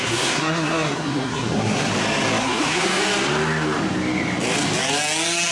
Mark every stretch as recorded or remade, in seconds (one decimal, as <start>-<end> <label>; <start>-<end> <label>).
0.0-1.9 remade; 1.9-2.4 recorded; 2.4-3.0 remade; 3.0-5.5 recorded

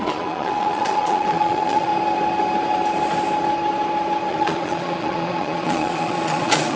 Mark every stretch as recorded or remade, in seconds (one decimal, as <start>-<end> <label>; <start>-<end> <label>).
0.0-1.9 remade; 1.9-4.3 recorded; 4.3-6.8 remade